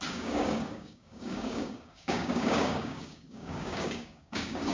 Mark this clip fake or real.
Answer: fake